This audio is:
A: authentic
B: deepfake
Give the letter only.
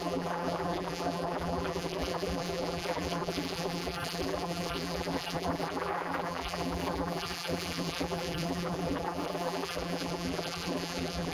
B